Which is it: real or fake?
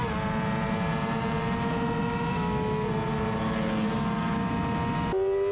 real